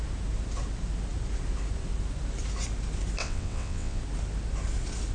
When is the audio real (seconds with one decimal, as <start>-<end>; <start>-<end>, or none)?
0.0-3.2; 4.0-5.1